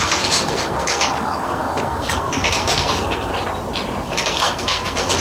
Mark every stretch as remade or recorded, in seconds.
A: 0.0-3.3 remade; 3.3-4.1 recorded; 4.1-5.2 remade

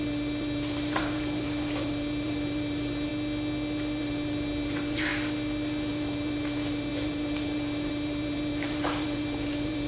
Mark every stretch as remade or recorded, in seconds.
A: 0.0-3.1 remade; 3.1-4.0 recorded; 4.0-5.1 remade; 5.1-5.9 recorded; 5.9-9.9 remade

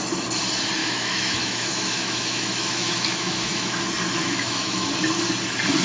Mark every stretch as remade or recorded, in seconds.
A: 0.0-0.8 recorded; 0.8-3.8 remade; 3.8-4.2 recorded; 4.2-4.9 remade; 4.9-5.8 recorded

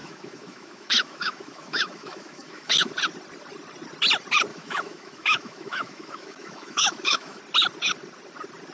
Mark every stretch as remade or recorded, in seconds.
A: 0.0-2.9 remade; 2.9-4.5 recorded; 4.5-7.4 remade; 7.4-8.7 recorded

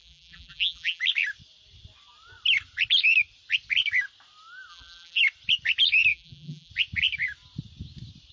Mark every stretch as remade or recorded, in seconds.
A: 0.0-1.0 remade; 1.0-4.7 recorded; 4.7-5.2 remade; 5.2-6.1 recorded; 6.1-6.7 remade; 6.7-8.3 recorded

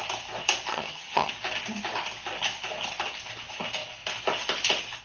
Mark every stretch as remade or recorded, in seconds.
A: 0.0-0.7 recorded; 0.7-1.3 remade; 1.3-5.0 recorded

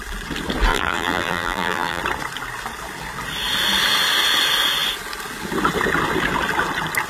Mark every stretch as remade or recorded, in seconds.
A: 0.0-0.7 recorded; 0.7-2.0 remade; 2.0-7.1 recorded

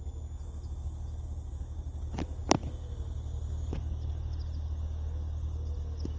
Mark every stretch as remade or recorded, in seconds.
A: 0.0-6.2 recorded